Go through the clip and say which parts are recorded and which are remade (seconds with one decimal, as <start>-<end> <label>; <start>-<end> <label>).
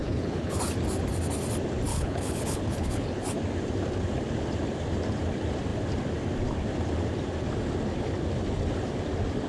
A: 0.0-0.6 remade; 0.6-1.9 recorded; 1.9-3.2 remade; 3.2-9.5 recorded